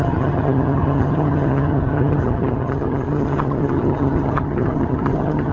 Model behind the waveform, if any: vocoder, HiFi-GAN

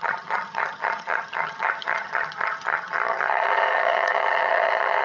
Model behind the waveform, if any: vocoder, HiFi-GAN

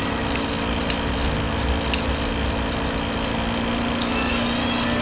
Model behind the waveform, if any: none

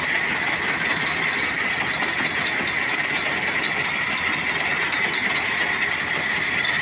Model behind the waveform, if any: none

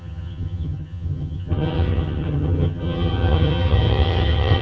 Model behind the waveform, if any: vocoder, HiFi-GAN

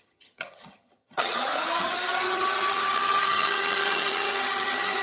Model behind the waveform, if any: vocoder, HiFi-GAN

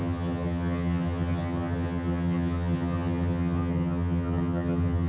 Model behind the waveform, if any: vocoder, HiFi-GAN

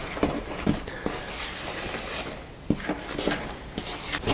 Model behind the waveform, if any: none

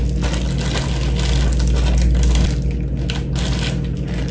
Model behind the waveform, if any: none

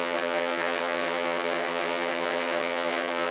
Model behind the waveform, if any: vocoder, HiFi-GAN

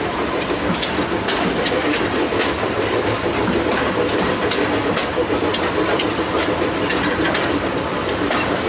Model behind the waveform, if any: none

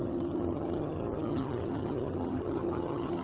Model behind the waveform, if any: vocoder, HiFi-GAN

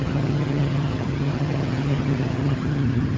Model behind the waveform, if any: vocoder, HiFi-GAN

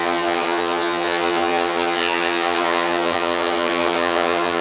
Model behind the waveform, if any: vocoder, HiFi-GAN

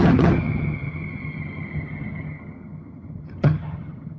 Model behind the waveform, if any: vocoder, HiFi-GAN